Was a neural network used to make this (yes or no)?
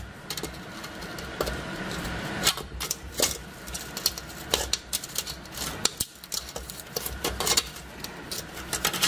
yes